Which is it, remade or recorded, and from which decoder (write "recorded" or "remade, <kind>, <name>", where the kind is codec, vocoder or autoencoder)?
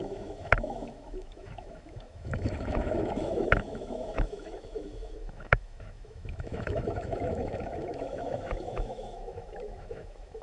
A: remade, autoencoder, DAC-VAE